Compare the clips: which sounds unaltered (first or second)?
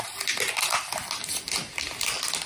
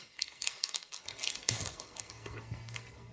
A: first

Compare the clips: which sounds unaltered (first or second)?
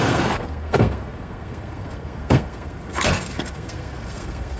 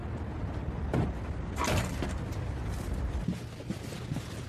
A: second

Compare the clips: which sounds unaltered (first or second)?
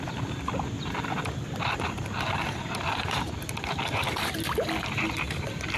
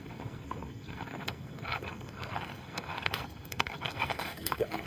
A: first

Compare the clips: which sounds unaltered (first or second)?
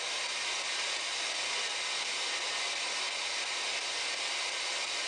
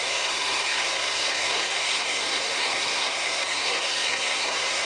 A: first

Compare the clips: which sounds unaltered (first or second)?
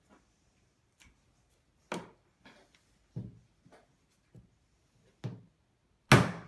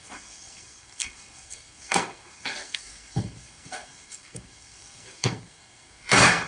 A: first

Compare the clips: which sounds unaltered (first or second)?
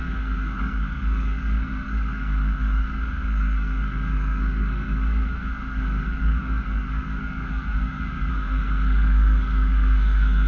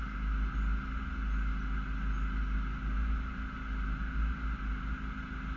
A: second